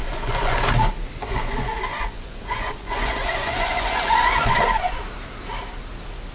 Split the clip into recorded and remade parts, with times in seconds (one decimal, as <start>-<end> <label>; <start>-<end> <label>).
0.0-0.6 remade; 0.6-1.2 recorded; 1.2-5.0 remade; 5.0-6.3 recorded